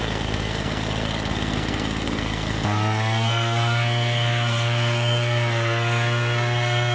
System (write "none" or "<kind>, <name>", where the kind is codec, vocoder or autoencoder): codec, SNAC